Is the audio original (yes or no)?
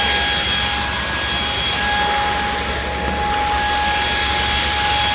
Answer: yes